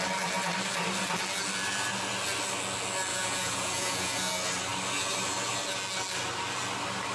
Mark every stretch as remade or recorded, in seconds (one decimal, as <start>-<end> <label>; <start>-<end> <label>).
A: 0.0-3.1 recorded; 3.1-4.3 remade; 4.3-7.1 recorded